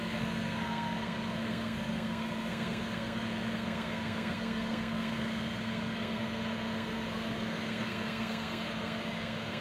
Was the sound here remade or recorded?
remade